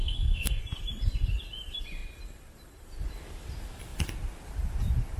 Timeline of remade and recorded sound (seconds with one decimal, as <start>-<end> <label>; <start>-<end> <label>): 0.0-0.6 remade; 0.6-5.2 recorded